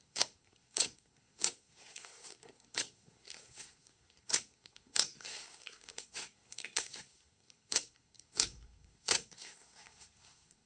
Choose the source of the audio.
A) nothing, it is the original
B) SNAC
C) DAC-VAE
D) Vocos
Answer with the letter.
B